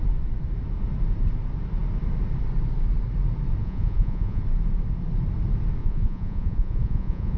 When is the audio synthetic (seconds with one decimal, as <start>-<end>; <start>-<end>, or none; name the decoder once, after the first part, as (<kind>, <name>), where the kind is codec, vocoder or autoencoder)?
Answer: 3.6-4.4 (vocoder, Vocos); 5.8-7.4